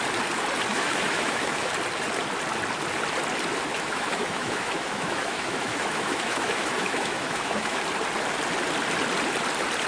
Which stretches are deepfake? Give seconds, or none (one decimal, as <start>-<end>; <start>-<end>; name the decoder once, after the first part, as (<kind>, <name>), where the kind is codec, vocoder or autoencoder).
0.7-1.7 (autoencoder, DAC-VAE); 3.7-7.8